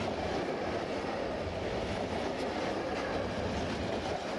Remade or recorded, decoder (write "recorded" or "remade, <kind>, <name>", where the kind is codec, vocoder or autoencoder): recorded